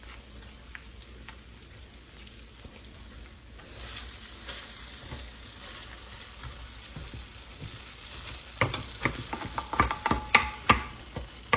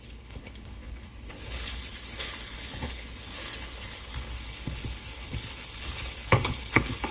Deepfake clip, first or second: second